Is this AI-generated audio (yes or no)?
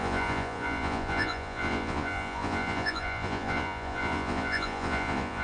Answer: yes